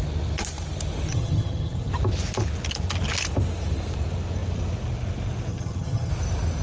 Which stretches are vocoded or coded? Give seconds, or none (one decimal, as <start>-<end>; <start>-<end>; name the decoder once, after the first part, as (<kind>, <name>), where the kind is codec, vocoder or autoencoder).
1.1-1.9 (vocoder, HiFi-GAN); 5.5-6.1